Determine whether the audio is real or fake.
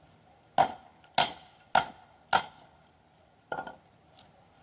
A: real